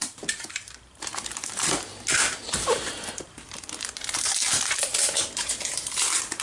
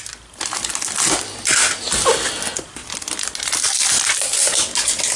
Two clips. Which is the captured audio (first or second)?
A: second